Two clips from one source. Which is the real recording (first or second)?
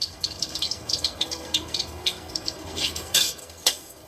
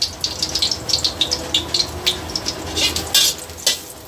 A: second